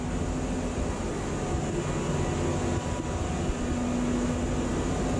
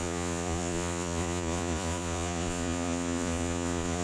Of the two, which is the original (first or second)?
first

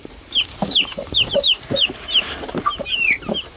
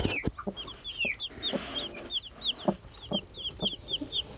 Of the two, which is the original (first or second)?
second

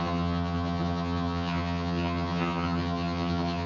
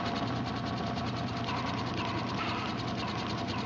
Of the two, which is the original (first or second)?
second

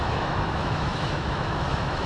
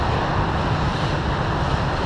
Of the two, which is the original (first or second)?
second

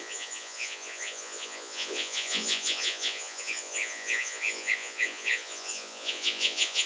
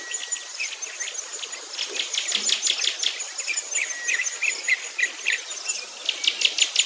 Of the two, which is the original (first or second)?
second